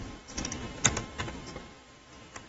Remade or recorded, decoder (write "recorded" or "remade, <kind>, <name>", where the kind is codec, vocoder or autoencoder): recorded